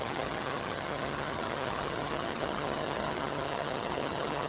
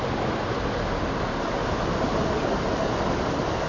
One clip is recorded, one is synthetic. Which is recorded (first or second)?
second